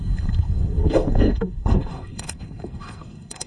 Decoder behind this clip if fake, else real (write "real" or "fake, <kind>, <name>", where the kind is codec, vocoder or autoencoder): fake, codec, SNAC